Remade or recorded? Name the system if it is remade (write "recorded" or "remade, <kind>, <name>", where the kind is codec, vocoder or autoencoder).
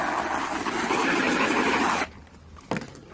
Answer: recorded